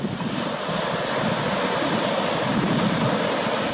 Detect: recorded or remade recorded